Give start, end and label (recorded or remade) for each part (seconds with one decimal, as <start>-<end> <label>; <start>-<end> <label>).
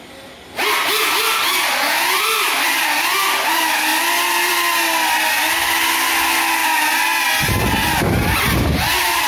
0.0-9.3 recorded